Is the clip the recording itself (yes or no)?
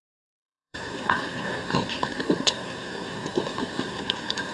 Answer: no